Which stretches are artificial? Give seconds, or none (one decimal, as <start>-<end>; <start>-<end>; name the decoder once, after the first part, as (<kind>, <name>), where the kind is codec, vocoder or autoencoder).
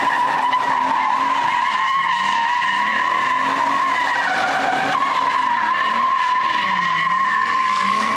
7.3-8.2 (codec, SNAC)